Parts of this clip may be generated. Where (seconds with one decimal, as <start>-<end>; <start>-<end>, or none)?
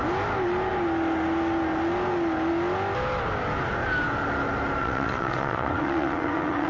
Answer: 4.8-6.7